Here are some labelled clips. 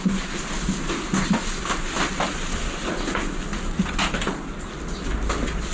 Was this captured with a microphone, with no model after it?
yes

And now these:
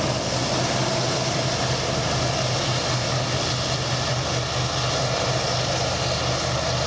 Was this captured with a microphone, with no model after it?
yes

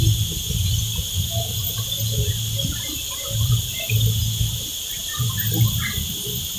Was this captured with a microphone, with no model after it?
yes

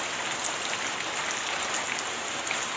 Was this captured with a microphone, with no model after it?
yes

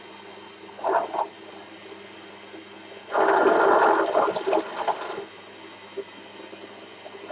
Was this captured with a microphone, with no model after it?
yes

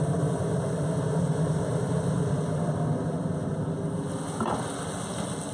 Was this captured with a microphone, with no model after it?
yes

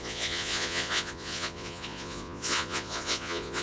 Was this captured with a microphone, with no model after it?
no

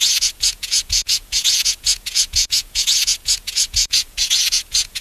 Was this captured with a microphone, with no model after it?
no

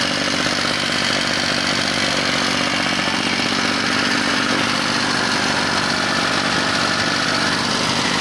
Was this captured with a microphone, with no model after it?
yes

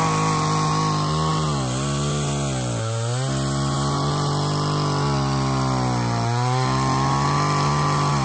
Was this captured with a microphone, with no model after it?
yes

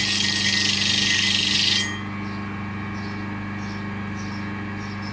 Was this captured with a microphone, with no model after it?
yes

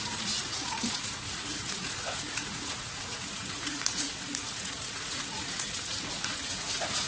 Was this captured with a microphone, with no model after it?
no